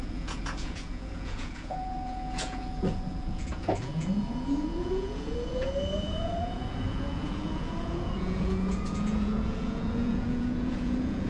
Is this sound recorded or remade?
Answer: remade